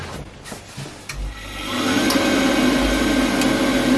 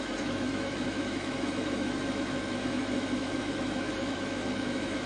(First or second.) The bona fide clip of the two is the first